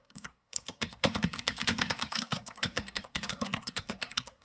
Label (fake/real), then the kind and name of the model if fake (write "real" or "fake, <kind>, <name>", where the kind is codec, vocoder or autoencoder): fake, codec, SNAC